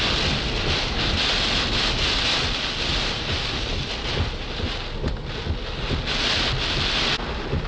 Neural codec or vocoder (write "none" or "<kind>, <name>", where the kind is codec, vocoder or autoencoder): none